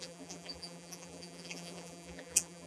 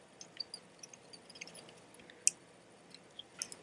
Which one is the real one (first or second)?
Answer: second